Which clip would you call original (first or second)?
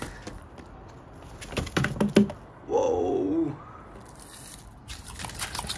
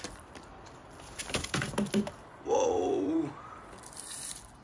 first